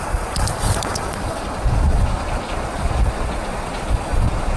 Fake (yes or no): yes